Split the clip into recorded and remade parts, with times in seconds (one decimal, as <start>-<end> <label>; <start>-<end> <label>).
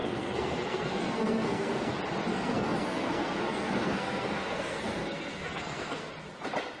0.0-1.9 remade; 1.9-2.3 recorded; 2.3-6.1 remade; 6.1-6.8 recorded